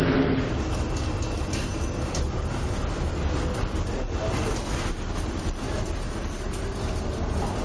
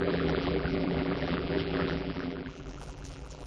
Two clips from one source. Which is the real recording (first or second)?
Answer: first